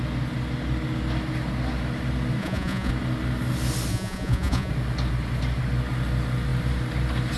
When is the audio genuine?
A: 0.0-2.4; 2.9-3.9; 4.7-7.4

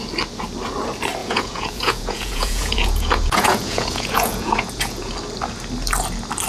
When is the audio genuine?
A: 0.0-1.2; 5.1-6.5

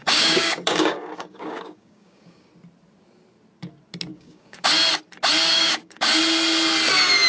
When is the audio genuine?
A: 2.5-4.1; 4.7-5.4; 6.2-7.3

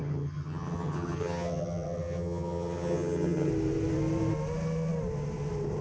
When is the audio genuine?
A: 3.5-5.8